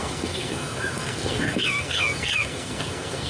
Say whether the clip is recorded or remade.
remade